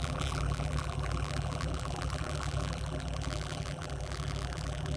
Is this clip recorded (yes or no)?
no